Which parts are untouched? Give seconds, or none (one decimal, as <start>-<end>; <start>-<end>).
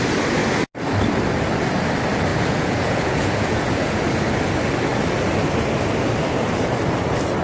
0.0-2.3; 4.0-7.4